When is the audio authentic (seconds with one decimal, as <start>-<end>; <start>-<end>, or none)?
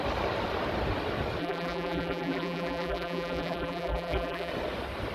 0.0-1.4; 4.5-5.1